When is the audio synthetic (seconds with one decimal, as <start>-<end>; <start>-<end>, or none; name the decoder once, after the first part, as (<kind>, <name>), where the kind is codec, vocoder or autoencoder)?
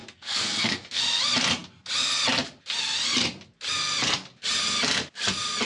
0.0-1.0 (codec, SNAC)